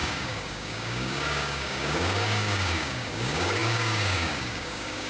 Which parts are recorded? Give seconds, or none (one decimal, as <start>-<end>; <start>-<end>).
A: none